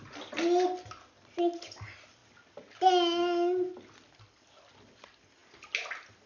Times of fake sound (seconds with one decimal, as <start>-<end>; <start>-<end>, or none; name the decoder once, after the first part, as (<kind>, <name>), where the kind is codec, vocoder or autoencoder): none